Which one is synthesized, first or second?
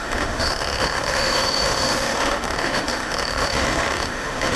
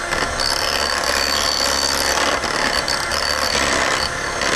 first